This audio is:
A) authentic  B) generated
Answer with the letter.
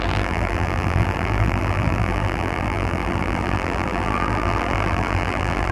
B